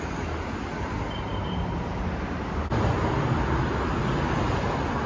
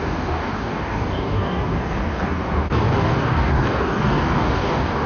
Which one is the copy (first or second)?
second